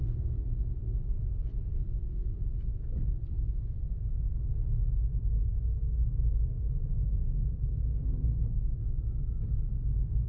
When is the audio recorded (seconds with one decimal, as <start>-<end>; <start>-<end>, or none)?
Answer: 0.0-10.3